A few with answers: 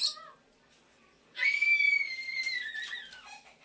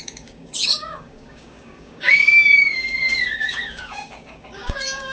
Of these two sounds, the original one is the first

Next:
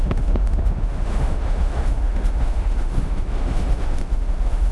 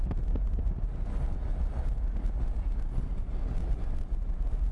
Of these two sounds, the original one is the second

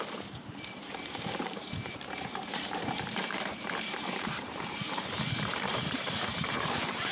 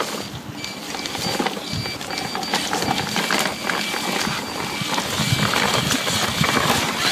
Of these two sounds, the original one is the second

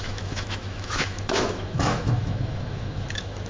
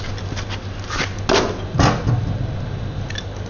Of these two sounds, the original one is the second